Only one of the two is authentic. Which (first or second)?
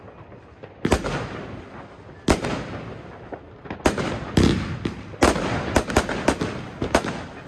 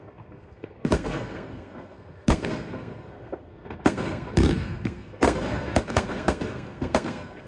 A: first